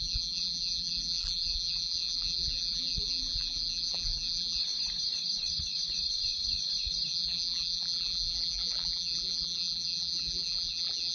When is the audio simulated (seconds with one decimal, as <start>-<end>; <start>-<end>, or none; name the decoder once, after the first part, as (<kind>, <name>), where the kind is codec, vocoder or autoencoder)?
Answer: 0.0-4.6 (vocoder, BigVGAN v2); 7.1-11.1